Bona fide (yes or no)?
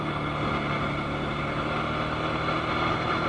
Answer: yes